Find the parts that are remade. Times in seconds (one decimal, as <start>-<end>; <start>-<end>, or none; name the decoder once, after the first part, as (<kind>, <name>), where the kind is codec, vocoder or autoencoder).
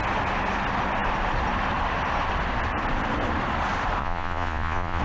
4.0-5.0 (vocoder, Vocos)